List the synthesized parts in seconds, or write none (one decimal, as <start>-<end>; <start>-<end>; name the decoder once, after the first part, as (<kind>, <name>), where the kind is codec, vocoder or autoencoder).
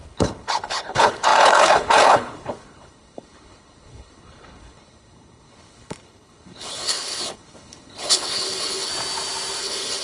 0.0-8.9 (codec, HILCodec); 9.6-10.0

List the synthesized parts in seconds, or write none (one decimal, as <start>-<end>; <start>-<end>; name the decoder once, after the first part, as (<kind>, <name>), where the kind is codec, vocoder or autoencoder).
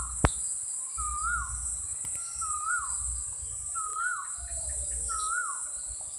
1.9-2.7 (vocoder, BigVGAN v2); 3.9-5.1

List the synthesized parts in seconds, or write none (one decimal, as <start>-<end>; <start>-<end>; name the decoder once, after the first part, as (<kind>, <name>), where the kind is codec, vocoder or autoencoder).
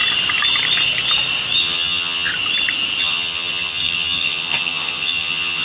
1.6-2.3 (vocoder, HiFi-GAN); 3.0-5.6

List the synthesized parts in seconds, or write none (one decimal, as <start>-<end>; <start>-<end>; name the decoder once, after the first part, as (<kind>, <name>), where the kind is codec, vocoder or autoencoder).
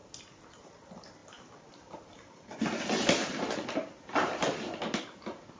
none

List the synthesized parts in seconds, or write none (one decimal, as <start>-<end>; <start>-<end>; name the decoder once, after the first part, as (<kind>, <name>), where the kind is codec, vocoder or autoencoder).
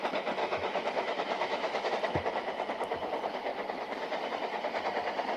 0.4-1.9 (autoencoder, DAC-VAE)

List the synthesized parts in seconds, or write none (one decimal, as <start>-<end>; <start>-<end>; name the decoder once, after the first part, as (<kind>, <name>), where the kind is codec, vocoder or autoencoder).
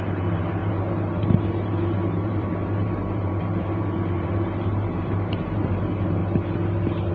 0.0-6.2 (vocoder, BigVGAN v2)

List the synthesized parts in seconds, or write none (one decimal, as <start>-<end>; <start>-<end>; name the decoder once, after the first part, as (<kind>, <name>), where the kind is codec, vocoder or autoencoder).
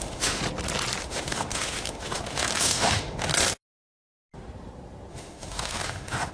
0.0-0.4 (autoencoder, DAC-VAE); 1.0-3.3; 5.1-6.3